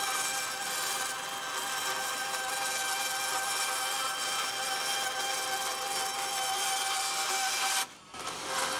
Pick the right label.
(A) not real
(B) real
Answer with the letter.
B